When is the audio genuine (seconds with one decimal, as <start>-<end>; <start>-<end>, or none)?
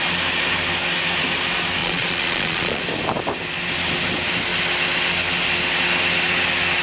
0.0-1.8; 2.8-6.8